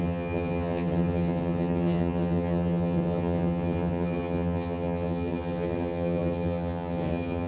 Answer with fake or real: fake